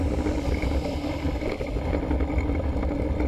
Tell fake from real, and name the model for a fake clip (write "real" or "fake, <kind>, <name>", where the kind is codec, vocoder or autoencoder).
real